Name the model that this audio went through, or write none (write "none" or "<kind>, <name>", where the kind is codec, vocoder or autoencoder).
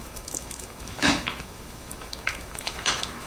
autoencoder, DAC-VAE